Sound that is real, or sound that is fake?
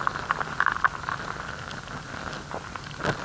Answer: real